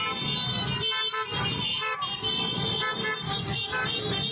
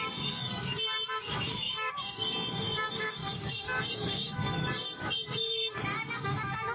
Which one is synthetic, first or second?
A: second